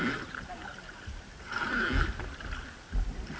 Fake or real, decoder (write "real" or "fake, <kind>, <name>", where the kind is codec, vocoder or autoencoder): real